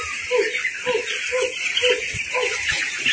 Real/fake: real